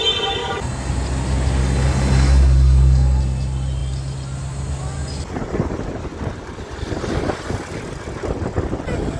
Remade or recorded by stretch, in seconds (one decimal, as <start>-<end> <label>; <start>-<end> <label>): 0.0-0.4 recorded; 0.4-0.9 remade; 0.9-1.6 recorded; 1.6-3.2 remade; 3.2-9.2 recorded

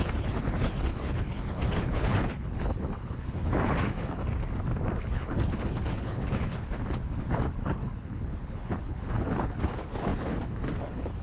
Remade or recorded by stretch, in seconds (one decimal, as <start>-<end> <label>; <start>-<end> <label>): 0.0-4.2 remade; 4.2-5.0 recorded; 5.0-11.2 remade

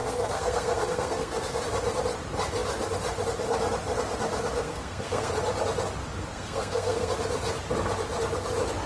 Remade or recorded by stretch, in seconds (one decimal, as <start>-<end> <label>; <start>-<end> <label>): 0.0-1.6 remade; 1.6-4.6 recorded; 4.6-5.3 remade; 5.3-6.3 recorded; 6.3-7.1 remade; 7.1-8.9 recorded

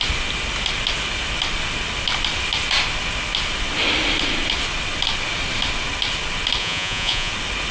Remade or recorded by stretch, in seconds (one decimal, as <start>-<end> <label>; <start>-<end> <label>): 0.0-6.6 recorded; 6.6-7.3 remade; 7.3-7.7 recorded

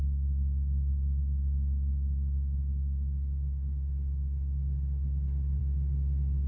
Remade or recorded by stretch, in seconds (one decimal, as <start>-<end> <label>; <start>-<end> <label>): 0.0-5.6 remade; 5.6-6.5 recorded

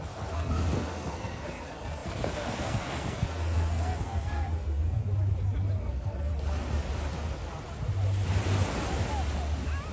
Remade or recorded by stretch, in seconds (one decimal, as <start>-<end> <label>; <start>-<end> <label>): 0.0-5.0 remade; 5.0-5.8 recorded; 5.8-6.3 remade; 6.3-9.9 recorded